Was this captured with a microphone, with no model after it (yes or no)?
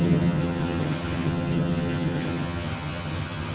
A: no